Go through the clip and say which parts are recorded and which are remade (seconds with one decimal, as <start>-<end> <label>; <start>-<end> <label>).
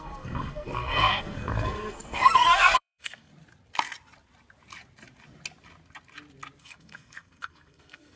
0.0-3.3 remade; 3.3-6.6 recorded; 6.6-8.2 remade